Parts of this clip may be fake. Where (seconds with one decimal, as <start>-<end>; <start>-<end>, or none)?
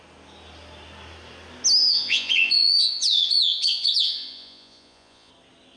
1.8-5.3